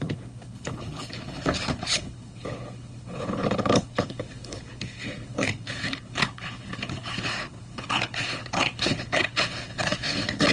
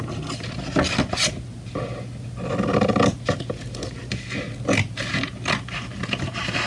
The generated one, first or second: first